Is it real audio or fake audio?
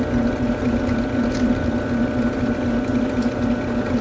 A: real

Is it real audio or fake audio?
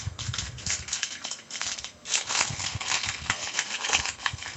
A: fake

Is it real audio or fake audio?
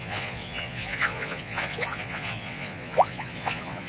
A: fake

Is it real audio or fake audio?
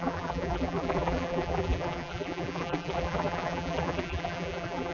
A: fake